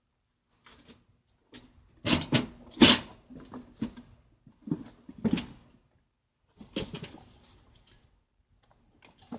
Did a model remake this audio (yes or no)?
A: no